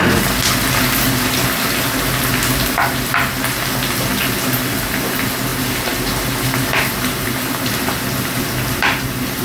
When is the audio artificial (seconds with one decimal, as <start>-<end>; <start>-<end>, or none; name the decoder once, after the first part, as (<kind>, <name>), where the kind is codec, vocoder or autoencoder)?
none